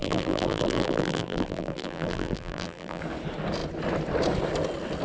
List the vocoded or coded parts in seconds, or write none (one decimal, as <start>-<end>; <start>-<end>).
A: 0.0-3.0

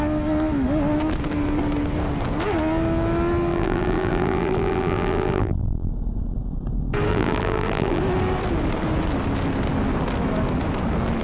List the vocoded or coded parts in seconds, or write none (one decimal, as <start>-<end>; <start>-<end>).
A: 3.5-5.9; 7.1-8.0

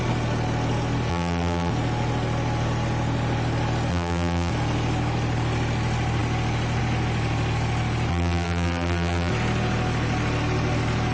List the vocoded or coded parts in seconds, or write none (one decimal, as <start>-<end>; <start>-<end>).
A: 1.1-1.7; 3.9-4.5; 8.1-9.3

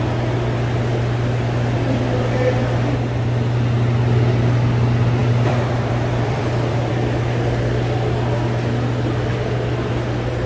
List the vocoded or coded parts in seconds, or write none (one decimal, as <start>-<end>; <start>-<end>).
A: 5.2-6.9

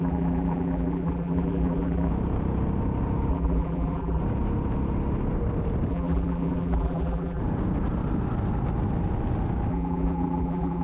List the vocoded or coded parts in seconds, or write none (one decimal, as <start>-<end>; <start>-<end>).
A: 0.0-2.1; 3.3-4.2; 5.9-7.4; 9.7-10.8